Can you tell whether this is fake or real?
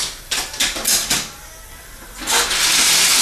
real